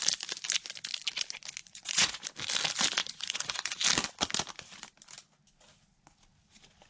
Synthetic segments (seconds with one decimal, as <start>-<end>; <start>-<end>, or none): 1.6-2.3; 3.0-3.8